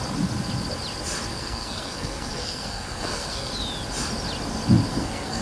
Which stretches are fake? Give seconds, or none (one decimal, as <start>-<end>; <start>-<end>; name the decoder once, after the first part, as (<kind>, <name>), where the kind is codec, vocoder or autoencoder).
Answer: 1.3-3.5 (codec, SNAC); 4.9-5.4